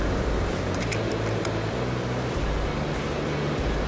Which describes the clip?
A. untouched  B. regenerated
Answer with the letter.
A